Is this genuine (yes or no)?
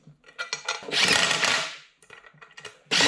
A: yes